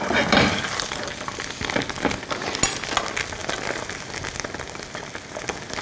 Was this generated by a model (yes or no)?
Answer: no